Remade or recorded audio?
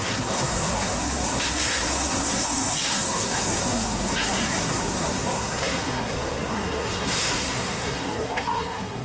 remade